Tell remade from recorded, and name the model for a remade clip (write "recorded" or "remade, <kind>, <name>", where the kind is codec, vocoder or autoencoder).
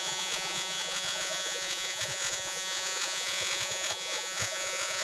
remade, vocoder, Vocos